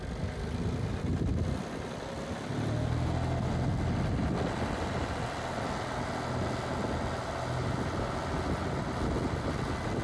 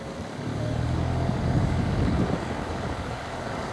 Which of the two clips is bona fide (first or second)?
first